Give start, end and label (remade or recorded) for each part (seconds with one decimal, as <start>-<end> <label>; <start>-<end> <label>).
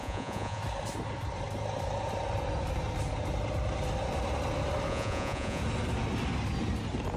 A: 0.0-0.6 remade; 0.6-4.9 recorded; 4.9-5.6 remade; 5.6-7.2 recorded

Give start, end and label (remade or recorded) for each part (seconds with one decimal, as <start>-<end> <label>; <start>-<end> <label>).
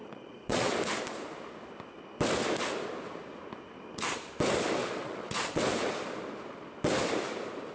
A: 0.0-0.7 remade; 0.7-4.8 recorded; 4.8-5.6 remade; 5.6-7.7 recorded